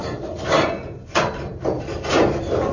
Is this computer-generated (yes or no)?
yes